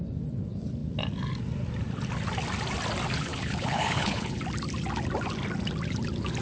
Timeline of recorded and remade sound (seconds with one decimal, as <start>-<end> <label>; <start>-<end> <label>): 0.0-3.3 recorded; 3.3-4.4 remade; 4.4-6.4 recorded

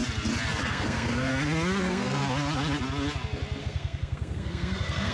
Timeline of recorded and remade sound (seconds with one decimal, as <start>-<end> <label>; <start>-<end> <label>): 0.0-0.7 recorded; 0.7-1.3 remade; 1.3-1.8 recorded; 1.8-2.2 remade; 2.2-3.6 recorded; 3.6-5.1 remade